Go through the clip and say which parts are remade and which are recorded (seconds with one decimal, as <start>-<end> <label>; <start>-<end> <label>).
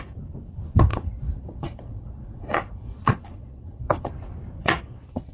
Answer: 0.0-0.9 recorded; 0.9-4.1 remade; 4.1-4.6 recorded; 4.6-5.3 remade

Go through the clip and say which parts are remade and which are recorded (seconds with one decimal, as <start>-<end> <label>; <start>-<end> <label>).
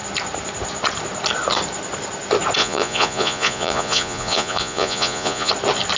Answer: 0.0-2.6 recorded; 2.6-5.5 remade; 5.5-6.0 recorded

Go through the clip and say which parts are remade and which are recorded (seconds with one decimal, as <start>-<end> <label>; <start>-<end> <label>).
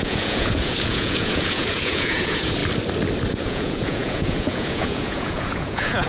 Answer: 0.0-2.6 remade; 2.6-3.3 recorded; 3.3-6.1 remade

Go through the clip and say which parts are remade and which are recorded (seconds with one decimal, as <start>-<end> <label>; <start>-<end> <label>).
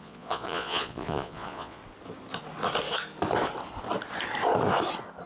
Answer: 0.0-1.8 remade; 1.8-5.3 recorded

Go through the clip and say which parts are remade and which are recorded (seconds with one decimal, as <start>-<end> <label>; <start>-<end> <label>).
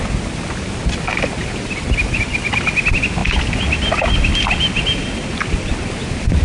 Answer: 0.0-6.4 recorded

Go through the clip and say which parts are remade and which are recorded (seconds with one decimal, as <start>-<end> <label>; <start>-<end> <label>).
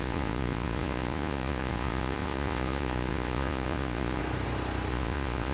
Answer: 0.0-4.2 remade; 4.2-4.9 recorded; 4.9-5.5 remade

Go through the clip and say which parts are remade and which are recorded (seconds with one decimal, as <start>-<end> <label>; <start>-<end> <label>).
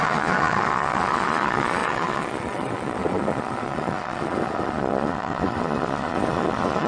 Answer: 0.0-6.9 remade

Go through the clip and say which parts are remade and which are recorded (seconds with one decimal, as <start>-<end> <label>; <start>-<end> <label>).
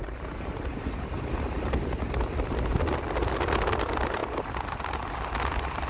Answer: 0.0-5.9 recorded